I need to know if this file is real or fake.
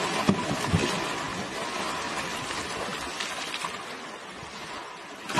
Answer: real